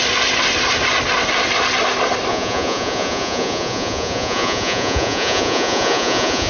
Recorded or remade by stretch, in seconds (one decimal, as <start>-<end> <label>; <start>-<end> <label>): 0.0-2.3 recorded; 2.3-6.5 remade